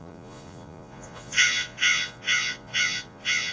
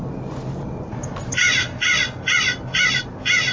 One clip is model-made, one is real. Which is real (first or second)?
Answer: second